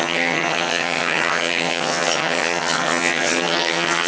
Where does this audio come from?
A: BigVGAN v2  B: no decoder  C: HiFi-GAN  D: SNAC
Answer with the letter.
C